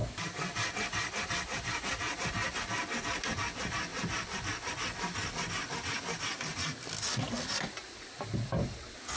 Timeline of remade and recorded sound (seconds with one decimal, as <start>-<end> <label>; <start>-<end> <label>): 0.0-9.2 recorded